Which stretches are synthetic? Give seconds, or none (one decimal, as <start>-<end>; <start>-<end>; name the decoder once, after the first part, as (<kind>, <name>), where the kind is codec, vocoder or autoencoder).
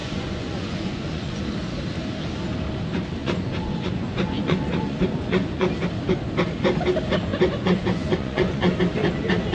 0.0-1.4 (vocoder, Vocos); 3.2-5.7; 7.3-8.7